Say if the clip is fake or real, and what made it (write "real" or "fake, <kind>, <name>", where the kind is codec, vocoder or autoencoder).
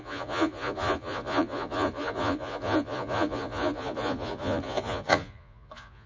fake, vocoder, Vocos